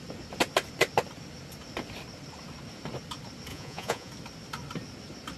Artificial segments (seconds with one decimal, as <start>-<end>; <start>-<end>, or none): 3.5-4.1